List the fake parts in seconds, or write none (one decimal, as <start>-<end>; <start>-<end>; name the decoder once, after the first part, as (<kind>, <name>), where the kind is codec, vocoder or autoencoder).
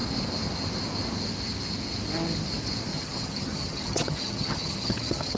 2.9-5.4 (vocoder, HiFi-GAN)